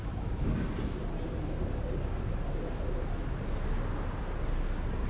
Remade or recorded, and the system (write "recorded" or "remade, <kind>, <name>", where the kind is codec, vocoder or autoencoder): recorded